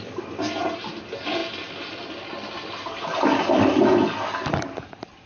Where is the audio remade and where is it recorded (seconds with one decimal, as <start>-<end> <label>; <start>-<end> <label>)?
0.0-5.3 recorded